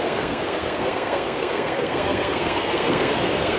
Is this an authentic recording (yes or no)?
no